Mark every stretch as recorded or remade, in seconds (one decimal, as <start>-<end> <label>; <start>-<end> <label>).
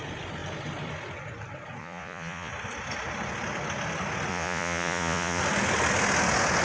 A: 0.0-1.8 recorded; 1.8-2.5 remade; 2.5-4.3 recorded; 4.3-5.4 remade; 5.4-6.6 recorded